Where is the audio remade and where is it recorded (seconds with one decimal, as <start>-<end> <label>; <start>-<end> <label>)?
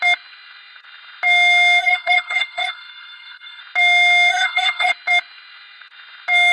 0.0-1.8 recorded; 1.8-3.6 remade; 3.6-4.3 recorded; 4.3-4.9 remade; 4.9-6.5 recorded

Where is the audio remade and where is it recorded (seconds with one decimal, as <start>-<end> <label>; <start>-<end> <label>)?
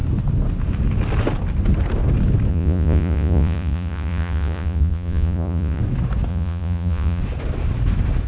0.0-2.5 recorded; 2.5-5.8 remade; 5.8-6.3 recorded; 6.3-7.2 remade; 7.2-8.3 recorded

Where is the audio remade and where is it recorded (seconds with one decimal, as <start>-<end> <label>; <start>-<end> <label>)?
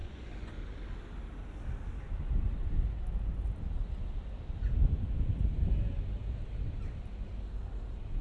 0.0-0.6 remade; 0.6-8.2 recorded